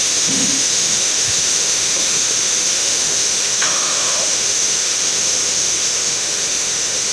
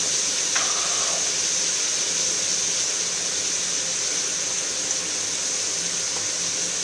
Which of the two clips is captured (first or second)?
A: second